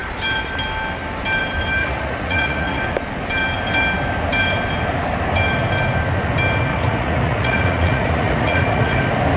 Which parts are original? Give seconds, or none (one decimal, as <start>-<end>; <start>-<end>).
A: 0.0-1.8; 2.8-6.7; 9.0-9.4